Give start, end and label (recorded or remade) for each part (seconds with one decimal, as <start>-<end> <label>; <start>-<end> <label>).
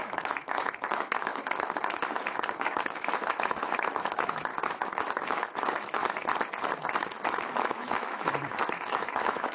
0.0-6.0 remade; 6.0-6.7 recorded; 6.7-9.5 remade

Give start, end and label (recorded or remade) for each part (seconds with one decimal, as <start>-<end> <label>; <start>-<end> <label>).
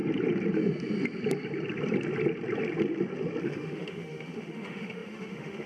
0.0-3.4 recorded; 3.4-5.7 remade